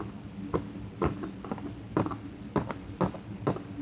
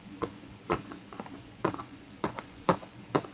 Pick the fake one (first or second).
second